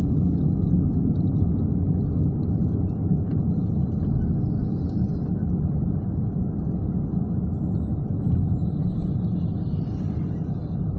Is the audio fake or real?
real